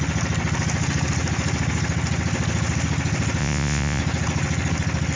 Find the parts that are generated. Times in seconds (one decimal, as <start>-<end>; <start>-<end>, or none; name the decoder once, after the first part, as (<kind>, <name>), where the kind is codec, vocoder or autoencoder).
3.4-4.0 (vocoder, Vocos)